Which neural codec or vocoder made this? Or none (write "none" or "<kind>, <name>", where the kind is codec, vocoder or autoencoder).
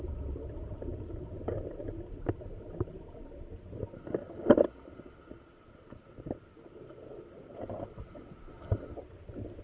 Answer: none